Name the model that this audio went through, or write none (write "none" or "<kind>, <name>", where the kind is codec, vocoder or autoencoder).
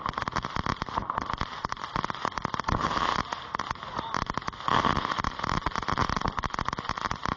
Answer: none